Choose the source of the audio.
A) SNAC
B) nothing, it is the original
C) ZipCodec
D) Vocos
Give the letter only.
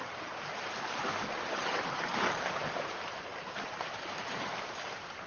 B